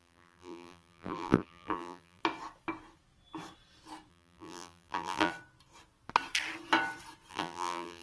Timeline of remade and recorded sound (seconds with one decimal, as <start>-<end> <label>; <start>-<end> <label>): 0.0-2.2 remade; 2.2-4.1 recorded; 4.1-5.3 remade; 5.3-7.3 recorded; 7.3-8.0 remade